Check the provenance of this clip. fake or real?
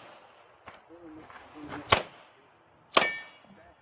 real